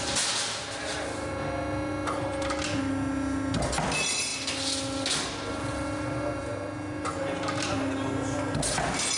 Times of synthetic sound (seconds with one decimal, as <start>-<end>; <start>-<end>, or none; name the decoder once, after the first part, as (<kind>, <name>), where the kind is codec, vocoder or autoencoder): none